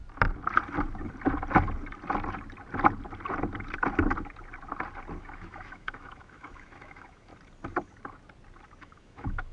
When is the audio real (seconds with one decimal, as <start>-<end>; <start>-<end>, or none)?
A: 0.0-5.2; 7.3-8.8